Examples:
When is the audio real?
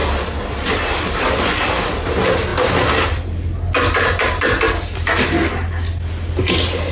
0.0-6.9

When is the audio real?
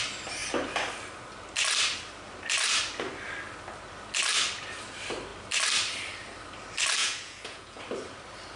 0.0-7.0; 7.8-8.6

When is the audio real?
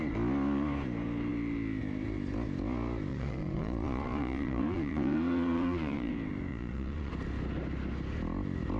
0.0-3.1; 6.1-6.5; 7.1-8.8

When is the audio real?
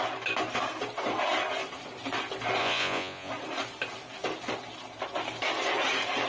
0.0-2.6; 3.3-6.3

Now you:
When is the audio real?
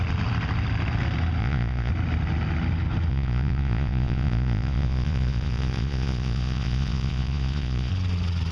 0.0-1.4; 1.9-3.1; 7.9-8.5